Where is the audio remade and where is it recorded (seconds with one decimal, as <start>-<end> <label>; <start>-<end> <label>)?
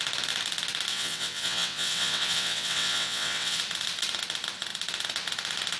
0.0-0.9 recorded; 0.9-3.6 remade; 3.6-5.8 recorded